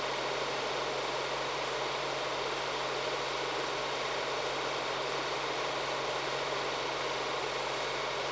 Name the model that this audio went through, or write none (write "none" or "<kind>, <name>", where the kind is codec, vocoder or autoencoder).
none